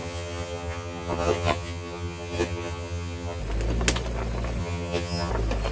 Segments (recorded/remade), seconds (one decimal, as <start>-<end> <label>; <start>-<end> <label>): 0.0-3.4 remade; 3.4-4.6 recorded; 4.6-5.3 remade; 5.3-5.7 recorded